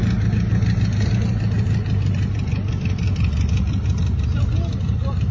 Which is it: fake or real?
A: real